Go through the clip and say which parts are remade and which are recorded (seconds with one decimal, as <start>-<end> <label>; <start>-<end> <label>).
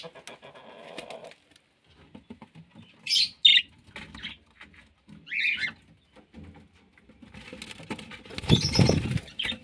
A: 0.0-9.6 recorded